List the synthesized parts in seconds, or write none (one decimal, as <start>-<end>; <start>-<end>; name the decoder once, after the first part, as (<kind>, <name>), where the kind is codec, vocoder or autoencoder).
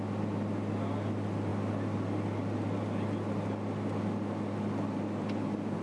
none